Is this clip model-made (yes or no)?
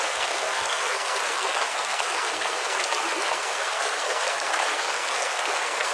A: yes